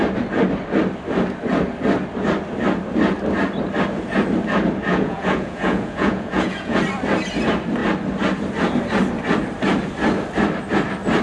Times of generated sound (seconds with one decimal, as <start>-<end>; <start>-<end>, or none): 4.9-6.8